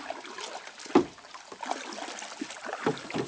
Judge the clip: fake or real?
real